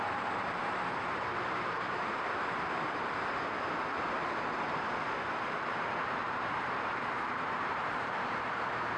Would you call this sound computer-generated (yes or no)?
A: yes